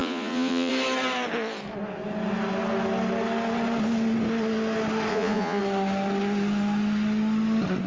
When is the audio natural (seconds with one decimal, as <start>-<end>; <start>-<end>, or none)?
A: 0.7-5.1; 5.6-7.9